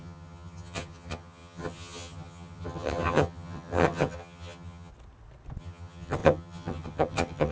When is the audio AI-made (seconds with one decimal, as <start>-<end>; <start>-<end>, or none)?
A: 0.0-4.9; 5.6-7.5